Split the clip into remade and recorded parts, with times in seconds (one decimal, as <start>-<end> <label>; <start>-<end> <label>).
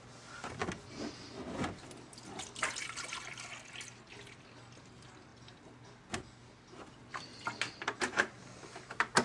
0.0-9.2 recorded